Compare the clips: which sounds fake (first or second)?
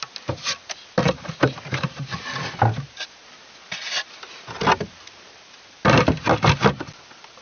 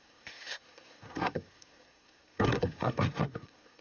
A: second